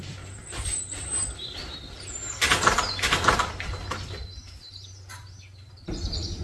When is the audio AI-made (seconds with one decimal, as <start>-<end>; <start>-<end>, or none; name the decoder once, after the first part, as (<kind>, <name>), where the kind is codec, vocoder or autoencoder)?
0.0-6.4 (vocoder, BigVGAN v2)